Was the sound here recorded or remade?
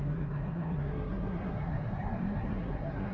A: remade